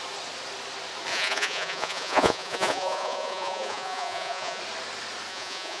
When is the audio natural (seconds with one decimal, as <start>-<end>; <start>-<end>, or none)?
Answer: 0.0-1.1; 4.6-5.3